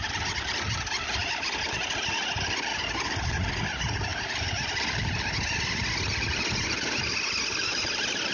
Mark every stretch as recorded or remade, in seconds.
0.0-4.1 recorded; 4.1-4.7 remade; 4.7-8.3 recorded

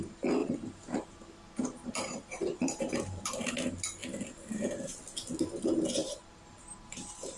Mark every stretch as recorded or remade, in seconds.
0.0-0.4 recorded; 0.4-3.5 remade; 3.5-4.0 recorded; 4.0-5.0 remade; 5.0-6.0 recorded; 6.0-7.4 remade

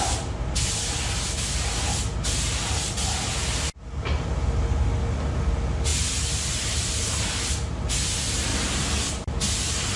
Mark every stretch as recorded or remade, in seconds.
0.0-5.9 recorded; 5.9-7.0 remade; 7.0-10.0 recorded

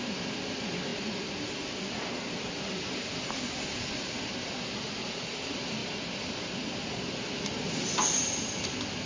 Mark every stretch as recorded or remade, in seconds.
0.0-5.8 remade; 5.8-7.0 recorded; 7.0-9.1 remade